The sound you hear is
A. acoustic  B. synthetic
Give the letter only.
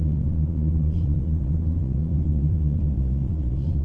B